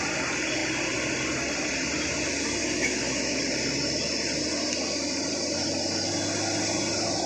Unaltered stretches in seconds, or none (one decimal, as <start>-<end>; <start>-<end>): 0.0-2.6; 3.4-7.3